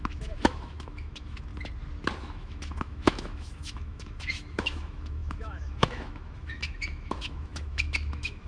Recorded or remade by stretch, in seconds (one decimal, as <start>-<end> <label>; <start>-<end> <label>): 0.0-1.5 remade; 1.5-2.2 recorded; 2.2-8.5 remade